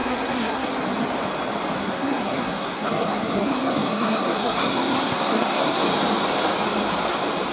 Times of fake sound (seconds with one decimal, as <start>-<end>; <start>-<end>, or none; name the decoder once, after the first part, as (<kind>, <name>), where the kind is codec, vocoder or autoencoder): 0.0-0.7 (codec, SNAC); 1.8-5.8